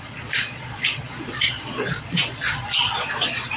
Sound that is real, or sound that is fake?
fake